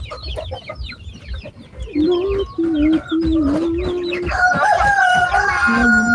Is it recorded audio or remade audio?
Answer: recorded